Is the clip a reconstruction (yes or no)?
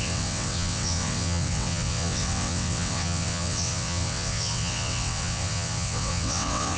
yes